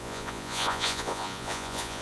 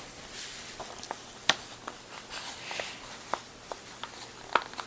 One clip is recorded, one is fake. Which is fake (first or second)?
first